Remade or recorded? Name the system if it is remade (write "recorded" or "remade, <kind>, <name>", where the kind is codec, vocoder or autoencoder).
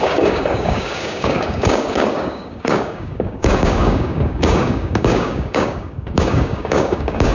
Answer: remade, codec, DAC